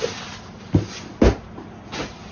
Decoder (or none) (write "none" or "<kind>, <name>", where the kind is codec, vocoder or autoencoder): none